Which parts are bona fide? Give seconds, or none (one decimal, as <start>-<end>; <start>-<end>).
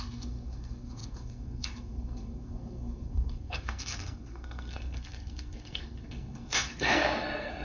none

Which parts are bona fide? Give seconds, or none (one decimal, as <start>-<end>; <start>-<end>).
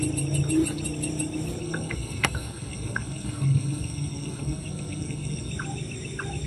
0.0-1.6; 5.5-6.5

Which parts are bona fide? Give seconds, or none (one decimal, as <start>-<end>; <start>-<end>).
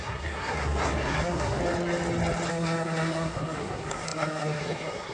1.6-2.5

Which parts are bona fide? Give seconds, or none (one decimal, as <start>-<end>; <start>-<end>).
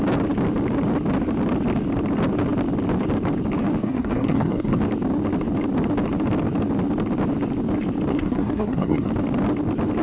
0.0-3.8; 4.8-8.1; 9.1-10.0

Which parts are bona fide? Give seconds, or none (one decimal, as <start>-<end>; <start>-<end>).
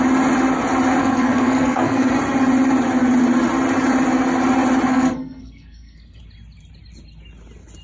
0.0-1.0; 2.1-4.9; 6.2-7.8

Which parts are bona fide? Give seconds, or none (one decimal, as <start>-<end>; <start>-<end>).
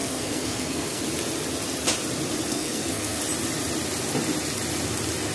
1.0-2.5; 3.2-5.3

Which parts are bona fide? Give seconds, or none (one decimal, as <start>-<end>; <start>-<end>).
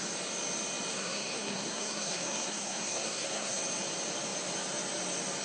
0.0-0.9; 3.6-5.4